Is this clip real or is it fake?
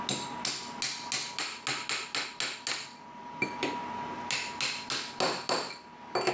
real